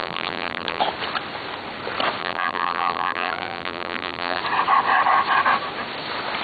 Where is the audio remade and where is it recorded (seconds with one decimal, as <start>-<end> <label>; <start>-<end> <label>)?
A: 0.0-0.8 remade; 0.8-2.2 recorded; 2.2-4.4 remade; 4.4-6.4 recorded